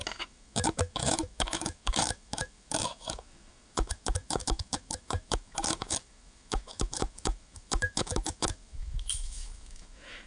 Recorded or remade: remade